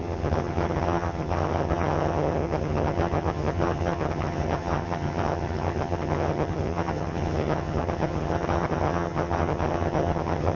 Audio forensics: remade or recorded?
remade